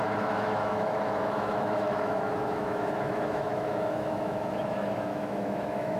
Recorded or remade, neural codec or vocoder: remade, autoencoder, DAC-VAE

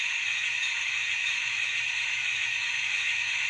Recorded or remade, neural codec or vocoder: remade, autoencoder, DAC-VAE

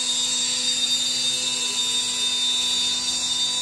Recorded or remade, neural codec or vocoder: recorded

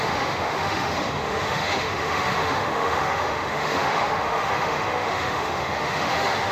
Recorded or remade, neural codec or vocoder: remade, autoencoder, DAC-VAE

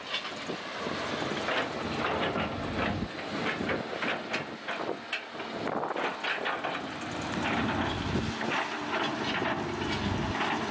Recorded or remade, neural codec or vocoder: recorded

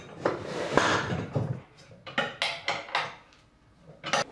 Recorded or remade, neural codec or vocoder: recorded